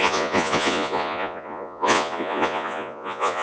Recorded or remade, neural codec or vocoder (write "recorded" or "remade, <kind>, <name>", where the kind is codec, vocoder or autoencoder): remade, vocoder, Vocos